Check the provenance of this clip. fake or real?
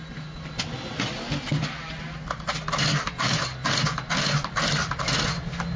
real